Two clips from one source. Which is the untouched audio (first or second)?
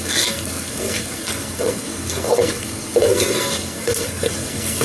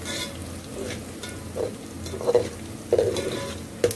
second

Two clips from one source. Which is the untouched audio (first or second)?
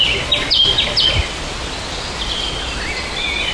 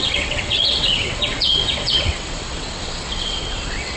first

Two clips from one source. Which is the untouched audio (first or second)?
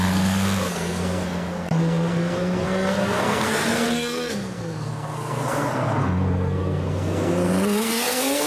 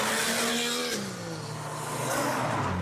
second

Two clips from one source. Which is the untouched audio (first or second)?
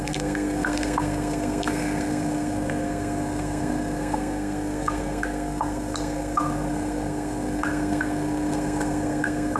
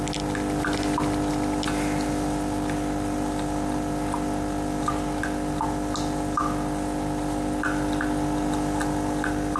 second